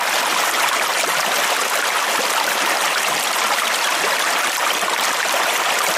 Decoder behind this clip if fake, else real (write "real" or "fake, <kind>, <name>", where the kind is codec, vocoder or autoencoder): real